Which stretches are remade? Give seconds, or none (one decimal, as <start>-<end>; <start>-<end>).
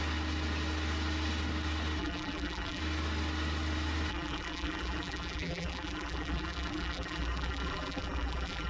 2.0-2.8; 4.1-8.7